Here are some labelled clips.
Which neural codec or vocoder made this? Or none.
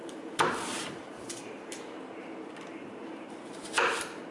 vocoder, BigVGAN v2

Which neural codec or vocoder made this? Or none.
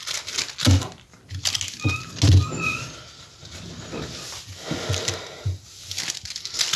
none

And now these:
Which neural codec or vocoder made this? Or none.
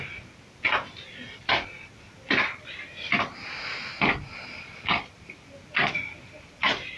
none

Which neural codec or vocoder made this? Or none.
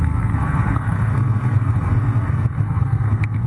codec, SNAC